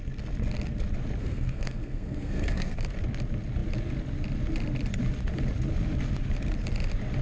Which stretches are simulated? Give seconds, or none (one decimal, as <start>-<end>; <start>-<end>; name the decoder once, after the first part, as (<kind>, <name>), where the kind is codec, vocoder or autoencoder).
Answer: 1.2-2.7 (codec, SNAC)